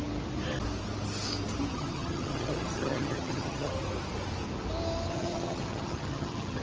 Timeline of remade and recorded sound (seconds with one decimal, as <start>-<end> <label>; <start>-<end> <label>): 0.0-1.7 recorded; 1.7-3.7 remade; 3.7-5.1 recorded; 5.1-6.6 remade